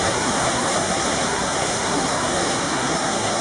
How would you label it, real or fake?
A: fake